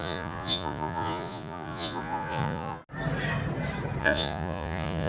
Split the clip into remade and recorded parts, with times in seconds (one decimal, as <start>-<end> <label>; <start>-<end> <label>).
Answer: 0.0-2.8 remade; 2.8-4.0 recorded; 4.0-5.1 remade